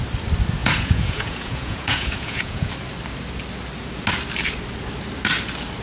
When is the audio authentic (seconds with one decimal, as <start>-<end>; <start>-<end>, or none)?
0.0-0.6; 2.7-5.8